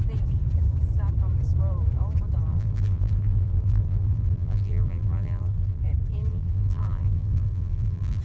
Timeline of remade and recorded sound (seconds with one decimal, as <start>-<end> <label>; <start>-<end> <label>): 0.0-2.5 recorded; 2.5-5.8 remade; 5.8-6.3 recorded; 6.3-8.2 remade